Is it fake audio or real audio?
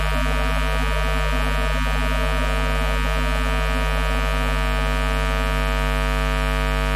real